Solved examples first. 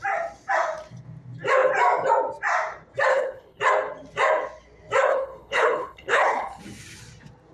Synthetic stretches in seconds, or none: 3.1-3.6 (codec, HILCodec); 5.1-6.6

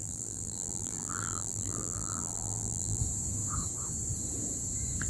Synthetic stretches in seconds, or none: 0.0-3.0 (vocoder, BigVGAN v2)